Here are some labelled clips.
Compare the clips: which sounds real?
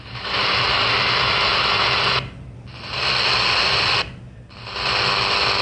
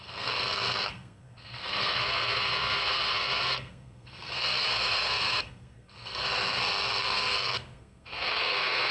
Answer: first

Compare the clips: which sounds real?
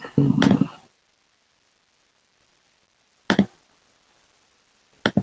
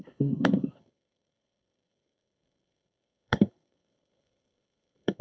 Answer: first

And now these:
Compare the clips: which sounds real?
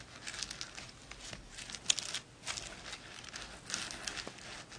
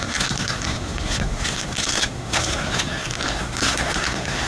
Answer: first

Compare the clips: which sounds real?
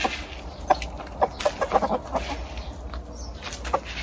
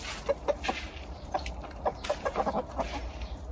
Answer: first